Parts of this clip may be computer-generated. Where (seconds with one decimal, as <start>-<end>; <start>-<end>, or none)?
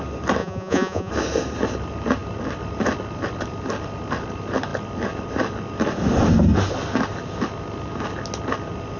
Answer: 0.4-1.1